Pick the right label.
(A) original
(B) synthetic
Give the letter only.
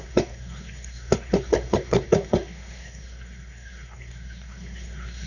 B